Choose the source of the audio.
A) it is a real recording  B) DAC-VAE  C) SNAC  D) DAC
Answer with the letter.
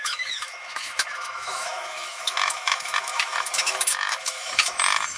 B